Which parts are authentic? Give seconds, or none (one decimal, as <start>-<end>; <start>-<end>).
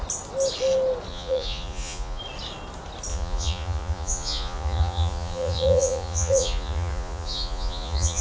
0.0-1.1; 2.2-3.1